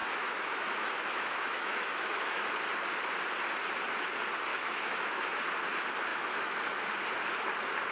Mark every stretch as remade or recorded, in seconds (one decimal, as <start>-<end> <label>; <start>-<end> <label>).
0.0-2.5 remade; 2.5-4.5 recorded; 4.5-5.4 remade; 5.4-6.1 recorded; 6.1-6.6 remade; 6.6-7.9 recorded